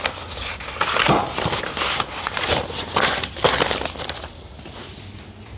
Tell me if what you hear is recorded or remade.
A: recorded